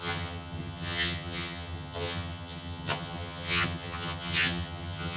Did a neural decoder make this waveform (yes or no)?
yes